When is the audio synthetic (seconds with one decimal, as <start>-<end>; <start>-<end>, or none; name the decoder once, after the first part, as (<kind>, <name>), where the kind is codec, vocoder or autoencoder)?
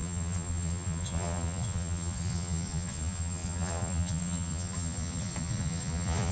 0.0-6.3 (vocoder, Vocos)